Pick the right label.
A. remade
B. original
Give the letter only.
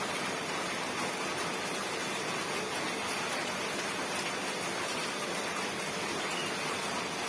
B